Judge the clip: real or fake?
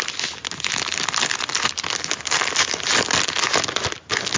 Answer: real